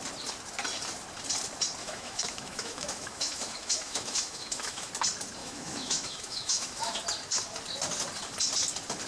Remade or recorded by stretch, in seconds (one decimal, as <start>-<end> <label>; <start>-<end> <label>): 0.0-1.8 recorded; 1.8-4.9 remade; 4.9-5.4 recorded; 5.4-7.0 remade; 7.0-9.1 recorded